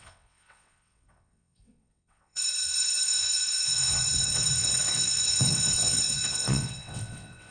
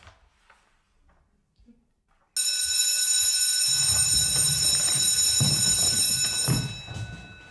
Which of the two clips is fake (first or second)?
first